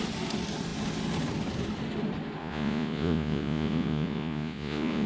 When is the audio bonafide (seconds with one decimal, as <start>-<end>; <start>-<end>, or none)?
0.0-2.4